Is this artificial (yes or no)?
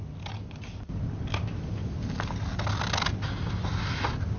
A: no